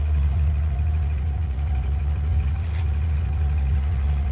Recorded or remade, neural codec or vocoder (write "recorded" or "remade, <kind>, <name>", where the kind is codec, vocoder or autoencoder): remade, vocoder, Vocos